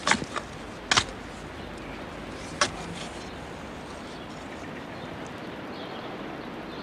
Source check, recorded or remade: recorded